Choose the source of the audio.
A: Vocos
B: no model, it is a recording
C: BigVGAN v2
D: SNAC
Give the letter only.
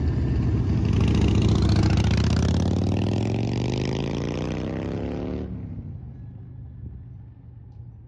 B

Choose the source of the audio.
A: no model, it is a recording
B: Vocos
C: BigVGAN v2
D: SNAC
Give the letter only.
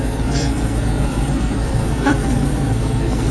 D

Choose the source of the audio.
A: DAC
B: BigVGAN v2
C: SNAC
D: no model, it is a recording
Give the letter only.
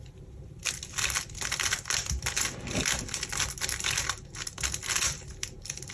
D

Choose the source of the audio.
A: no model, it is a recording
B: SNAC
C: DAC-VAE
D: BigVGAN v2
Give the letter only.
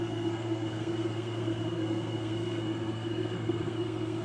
B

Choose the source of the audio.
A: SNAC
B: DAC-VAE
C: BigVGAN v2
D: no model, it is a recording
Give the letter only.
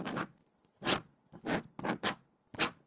D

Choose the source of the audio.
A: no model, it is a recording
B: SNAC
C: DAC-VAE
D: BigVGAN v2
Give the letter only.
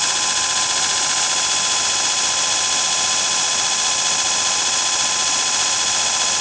A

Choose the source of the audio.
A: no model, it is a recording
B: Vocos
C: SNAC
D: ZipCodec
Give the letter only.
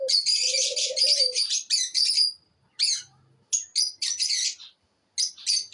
A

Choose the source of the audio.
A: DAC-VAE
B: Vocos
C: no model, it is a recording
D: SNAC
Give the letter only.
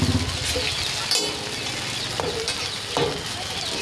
C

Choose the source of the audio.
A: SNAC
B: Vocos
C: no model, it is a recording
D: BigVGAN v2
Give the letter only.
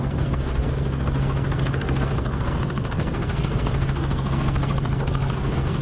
A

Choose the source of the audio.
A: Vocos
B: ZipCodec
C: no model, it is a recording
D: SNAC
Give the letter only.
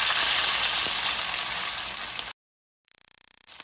C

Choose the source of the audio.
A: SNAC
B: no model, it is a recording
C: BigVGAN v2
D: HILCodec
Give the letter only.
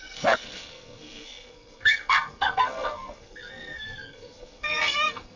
A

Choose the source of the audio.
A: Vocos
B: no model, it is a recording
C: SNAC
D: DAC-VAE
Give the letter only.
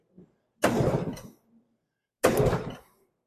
B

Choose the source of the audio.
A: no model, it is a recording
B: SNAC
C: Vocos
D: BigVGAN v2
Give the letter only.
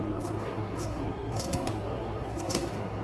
B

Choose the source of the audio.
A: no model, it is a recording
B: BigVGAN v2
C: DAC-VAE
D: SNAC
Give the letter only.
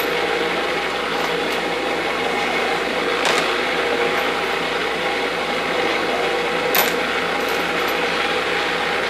A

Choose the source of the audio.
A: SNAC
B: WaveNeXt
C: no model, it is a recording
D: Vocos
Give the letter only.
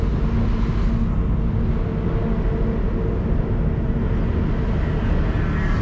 C